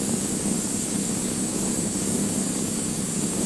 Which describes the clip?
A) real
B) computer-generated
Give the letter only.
B